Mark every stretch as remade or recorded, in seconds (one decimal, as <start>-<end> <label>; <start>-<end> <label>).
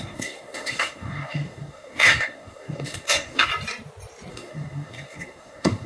0.0-3.5 remade; 3.5-4.3 recorded; 4.3-5.9 remade